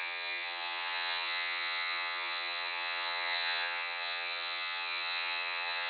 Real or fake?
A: fake